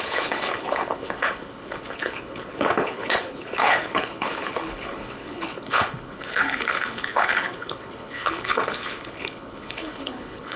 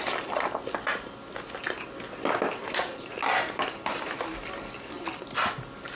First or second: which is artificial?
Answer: first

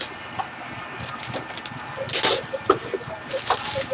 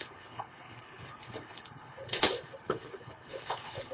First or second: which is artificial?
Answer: second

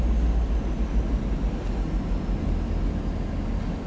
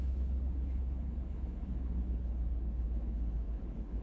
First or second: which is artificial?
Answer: second